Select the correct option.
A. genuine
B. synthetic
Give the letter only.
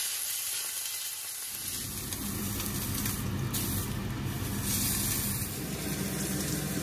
A